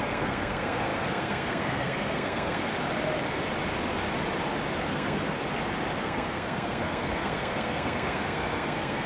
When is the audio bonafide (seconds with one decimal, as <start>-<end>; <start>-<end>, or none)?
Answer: 2.7-4.8; 5.4-6.0